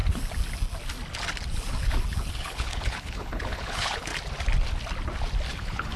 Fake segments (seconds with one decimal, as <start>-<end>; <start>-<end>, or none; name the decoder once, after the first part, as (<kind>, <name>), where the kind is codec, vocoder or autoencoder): 2.3-4.1 (codec, HILCodec); 5.5-6.0